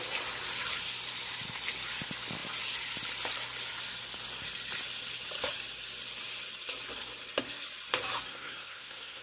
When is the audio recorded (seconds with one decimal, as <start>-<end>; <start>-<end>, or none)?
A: 0.0-8.3